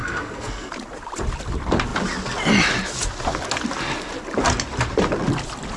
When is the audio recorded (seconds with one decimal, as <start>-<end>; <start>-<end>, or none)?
0.7-5.8